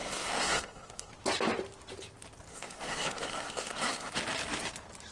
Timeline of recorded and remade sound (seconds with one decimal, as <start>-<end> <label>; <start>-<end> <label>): 0.0-1.1 remade; 1.1-2.5 recorded; 2.5-4.1 remade; 4.1-5.1 recorded